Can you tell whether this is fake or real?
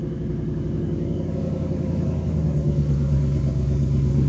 fake